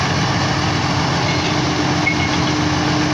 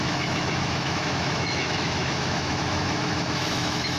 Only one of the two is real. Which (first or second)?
first